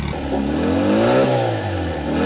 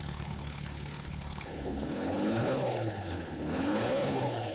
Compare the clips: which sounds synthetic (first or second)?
second